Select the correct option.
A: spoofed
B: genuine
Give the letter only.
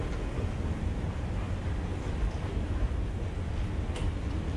B